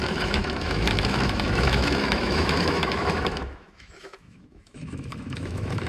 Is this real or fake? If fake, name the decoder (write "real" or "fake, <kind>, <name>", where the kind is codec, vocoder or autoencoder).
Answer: fake, autoencoder, DAC-VAE